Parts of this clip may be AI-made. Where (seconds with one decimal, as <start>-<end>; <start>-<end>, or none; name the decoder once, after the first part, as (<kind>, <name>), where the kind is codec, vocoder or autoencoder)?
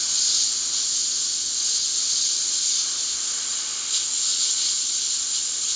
4.3-5.0 (vocoder, WaveNeXt)